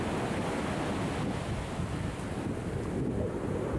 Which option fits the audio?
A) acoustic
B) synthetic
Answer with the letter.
A